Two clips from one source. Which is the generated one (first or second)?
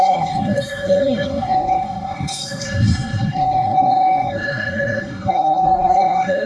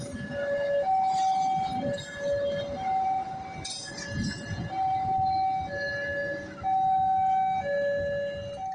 first